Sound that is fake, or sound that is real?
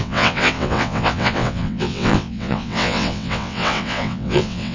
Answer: fake